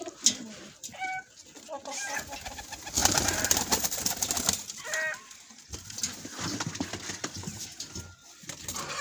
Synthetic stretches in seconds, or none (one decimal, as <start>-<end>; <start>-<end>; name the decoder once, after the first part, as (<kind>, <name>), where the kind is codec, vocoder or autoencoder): none